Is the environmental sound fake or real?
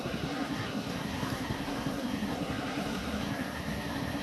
fake